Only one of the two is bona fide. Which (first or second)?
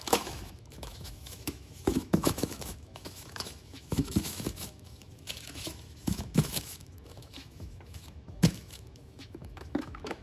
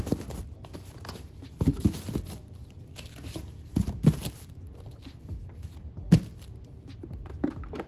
second